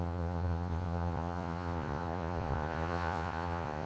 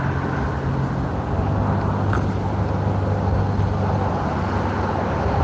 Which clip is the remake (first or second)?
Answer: first